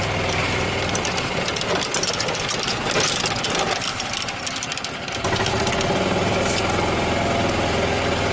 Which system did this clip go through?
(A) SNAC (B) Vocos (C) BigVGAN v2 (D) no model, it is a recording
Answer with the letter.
D